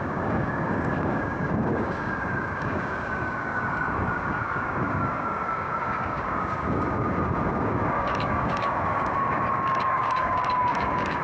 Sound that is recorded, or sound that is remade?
remade